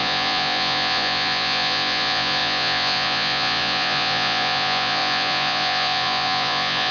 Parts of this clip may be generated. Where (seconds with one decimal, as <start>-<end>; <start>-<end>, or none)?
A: 0.0-6.9